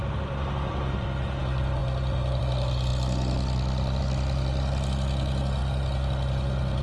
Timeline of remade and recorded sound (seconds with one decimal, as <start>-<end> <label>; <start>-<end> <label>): 0.0-6.8 recorded